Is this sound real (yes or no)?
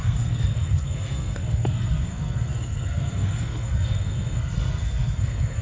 no